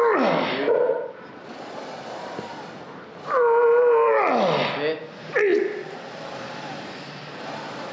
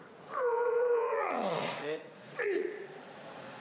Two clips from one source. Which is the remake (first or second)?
second